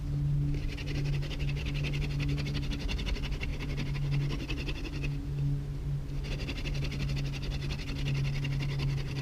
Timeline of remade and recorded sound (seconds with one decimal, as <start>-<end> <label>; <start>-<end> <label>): 0.0-9.2 recorded